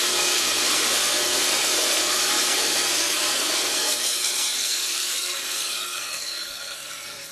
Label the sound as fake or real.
fake